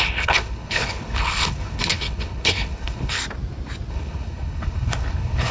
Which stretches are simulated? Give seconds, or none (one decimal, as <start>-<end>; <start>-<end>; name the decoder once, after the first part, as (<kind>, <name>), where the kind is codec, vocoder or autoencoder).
0.0-3.2 (codec, HILCodec); 3.9-5.5